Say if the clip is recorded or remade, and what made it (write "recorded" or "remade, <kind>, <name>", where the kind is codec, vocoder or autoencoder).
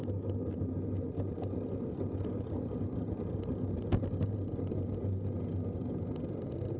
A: recorded